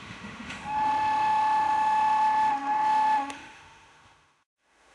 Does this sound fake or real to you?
fake